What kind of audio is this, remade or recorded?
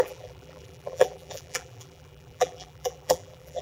remade